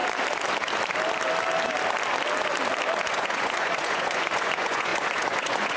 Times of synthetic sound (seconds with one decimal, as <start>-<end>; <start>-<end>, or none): 3.1-5.8